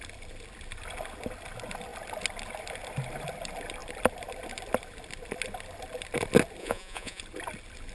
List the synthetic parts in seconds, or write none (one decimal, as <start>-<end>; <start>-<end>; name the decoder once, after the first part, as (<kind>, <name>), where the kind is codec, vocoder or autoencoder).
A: 6.6-7.2 (vocoder, Vocos)